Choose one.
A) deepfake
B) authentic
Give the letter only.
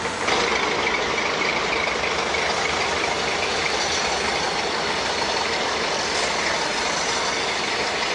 B